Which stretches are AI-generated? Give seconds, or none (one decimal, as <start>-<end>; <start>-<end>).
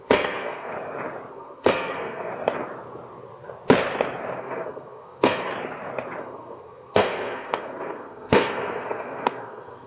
0.0-0.7; 1.3-2.3; 4.4-5.5; 6.2-9.9